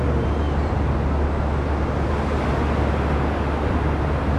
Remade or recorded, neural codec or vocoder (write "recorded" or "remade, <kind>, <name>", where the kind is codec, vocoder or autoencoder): recorded